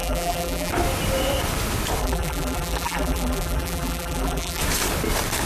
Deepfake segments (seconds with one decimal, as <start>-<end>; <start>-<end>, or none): 0.0-0.7; 2.0-4.6

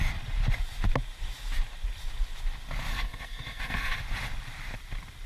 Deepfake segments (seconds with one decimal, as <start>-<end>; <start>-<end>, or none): 2.9-4.0

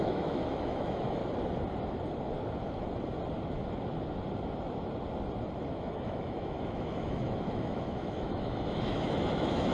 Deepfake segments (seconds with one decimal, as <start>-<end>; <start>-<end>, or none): 0.0-1.2; 5.7-9.7

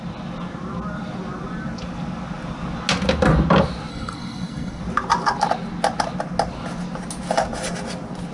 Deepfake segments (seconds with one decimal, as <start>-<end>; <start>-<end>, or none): 3.9-4.8

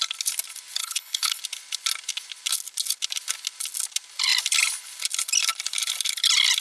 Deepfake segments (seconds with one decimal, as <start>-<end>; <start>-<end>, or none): 0.8-1.4

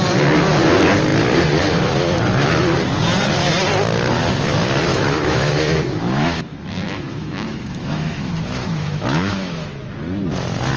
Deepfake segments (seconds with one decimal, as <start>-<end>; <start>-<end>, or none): 4.9-9.9

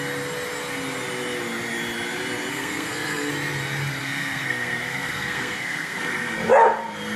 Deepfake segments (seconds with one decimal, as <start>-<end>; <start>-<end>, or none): 2.5-3.3; 4.0-6.4

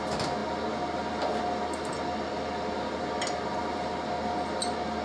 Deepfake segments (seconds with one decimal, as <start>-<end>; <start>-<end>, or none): none